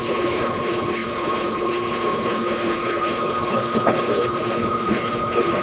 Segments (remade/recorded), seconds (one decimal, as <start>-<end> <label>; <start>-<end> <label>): 0.0-5.6 remade